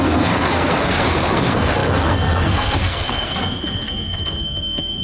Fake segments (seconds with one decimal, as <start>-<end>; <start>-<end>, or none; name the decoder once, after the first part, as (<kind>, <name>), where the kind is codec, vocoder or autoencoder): 0.0-5.0 (codec, SNAC)